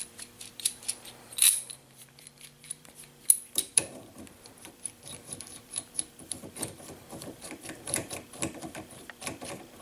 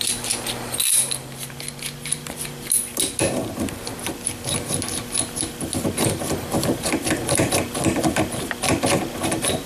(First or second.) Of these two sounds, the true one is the second